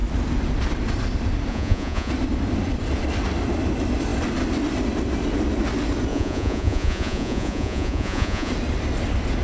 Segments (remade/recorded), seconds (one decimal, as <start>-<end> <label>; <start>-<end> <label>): 0.0-1.5 recorded; 1.5-2.1 remade; 2.1-6.1 recorded; 6.1-8.5 remade; 8.5-9.4 recorded